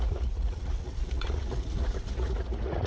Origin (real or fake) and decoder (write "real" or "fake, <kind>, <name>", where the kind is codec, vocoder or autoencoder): fake, vocoder, Vocos